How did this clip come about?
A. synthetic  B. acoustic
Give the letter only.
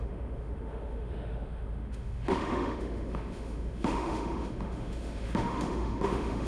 A